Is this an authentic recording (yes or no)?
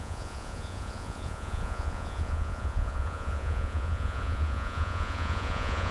no